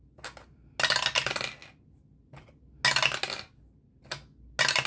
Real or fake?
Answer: real